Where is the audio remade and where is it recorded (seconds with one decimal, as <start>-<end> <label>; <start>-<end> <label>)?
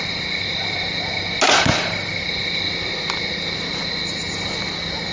0.0-5.1 recorded